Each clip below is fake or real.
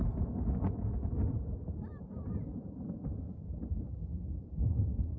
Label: real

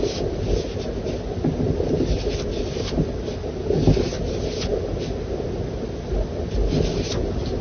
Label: real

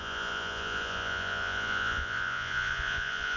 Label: fake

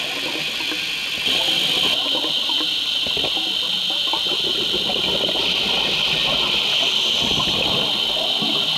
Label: real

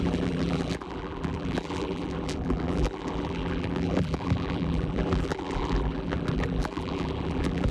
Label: fake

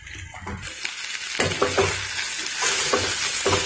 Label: real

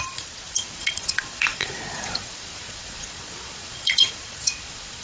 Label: fake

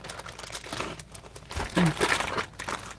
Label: real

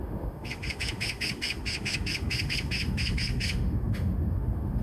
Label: fake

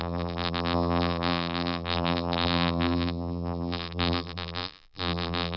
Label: fake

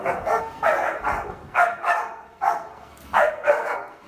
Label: fake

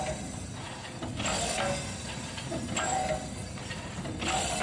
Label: real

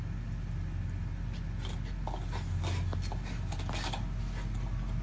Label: real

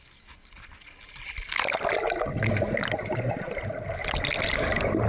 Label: real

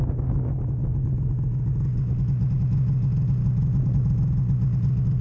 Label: real